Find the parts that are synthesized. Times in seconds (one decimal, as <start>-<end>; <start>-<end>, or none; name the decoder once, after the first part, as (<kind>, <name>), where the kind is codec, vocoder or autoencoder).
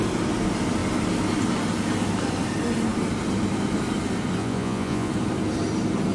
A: 4.4-5.1 (vocoder, Vocos)